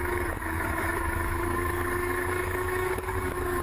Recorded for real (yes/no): no